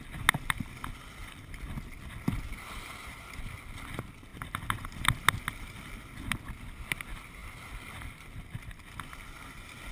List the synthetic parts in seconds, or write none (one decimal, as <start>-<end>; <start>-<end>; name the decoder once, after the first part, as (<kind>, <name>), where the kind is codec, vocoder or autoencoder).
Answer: 1.2-2.9 (vocoder, BigVGAN v2); 4.3-6.4